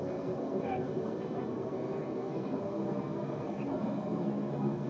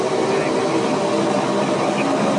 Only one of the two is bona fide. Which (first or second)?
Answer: second